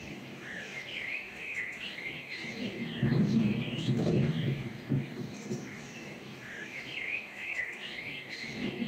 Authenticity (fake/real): fake